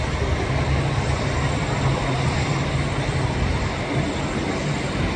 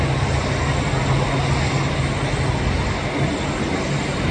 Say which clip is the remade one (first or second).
first